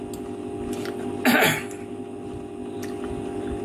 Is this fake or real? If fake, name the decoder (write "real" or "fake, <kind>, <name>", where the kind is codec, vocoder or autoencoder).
real